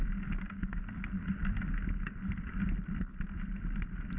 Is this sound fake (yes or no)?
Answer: no